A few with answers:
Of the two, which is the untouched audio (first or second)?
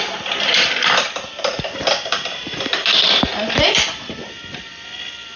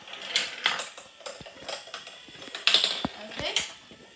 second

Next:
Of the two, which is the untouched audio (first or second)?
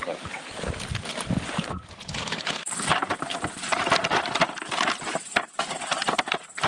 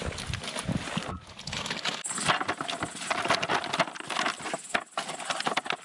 second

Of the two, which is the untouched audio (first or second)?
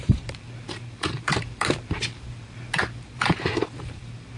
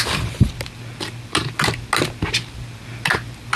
second